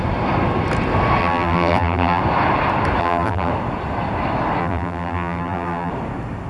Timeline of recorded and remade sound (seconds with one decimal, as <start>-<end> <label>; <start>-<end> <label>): 0.0-1.2 recorded; 1.2-2.2 remade; 2.2-3.0 recorded; 3.0-3.5 remade; 3.5-4.6 recorded; 4.6-5.9 remade; 5.9-6.5 recorded